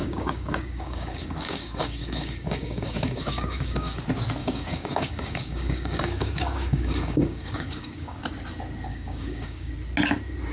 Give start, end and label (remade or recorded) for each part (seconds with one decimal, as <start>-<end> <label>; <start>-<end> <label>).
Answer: 0.0-4.0 remade; 4.0-4.4 recorded; 4.4-8.2 remade; 8.2-8.9 recorded; 8.9-9.7 remade; 9.7-10.5 recorded